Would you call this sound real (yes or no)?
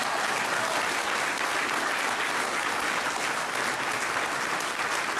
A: yes